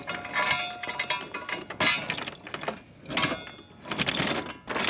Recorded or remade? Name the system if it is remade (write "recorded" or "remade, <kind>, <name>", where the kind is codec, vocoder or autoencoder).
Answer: recorded